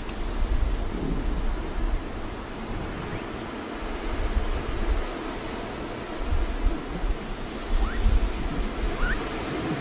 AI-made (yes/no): no